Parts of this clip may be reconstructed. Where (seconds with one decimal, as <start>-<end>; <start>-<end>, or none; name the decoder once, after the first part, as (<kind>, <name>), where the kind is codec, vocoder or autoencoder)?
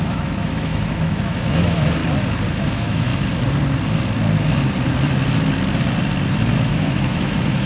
0.0-2.0 (autoencoder, DAC-VAE); 2.5-3.1; 6.7-7.7